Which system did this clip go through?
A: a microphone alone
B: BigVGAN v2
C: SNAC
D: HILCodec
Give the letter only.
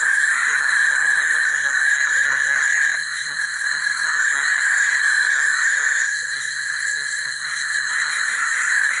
C